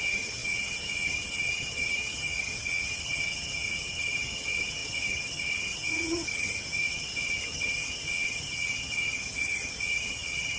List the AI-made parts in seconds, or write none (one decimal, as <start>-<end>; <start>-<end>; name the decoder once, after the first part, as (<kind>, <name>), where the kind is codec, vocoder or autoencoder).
0.0-10.6 (vocoder, HiFi-GAN)